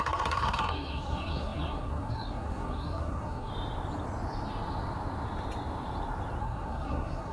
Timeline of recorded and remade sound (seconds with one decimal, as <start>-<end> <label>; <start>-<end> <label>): 0.0-3.5 remade; 3.5-6.4 recorded; 6.4-7.3 remade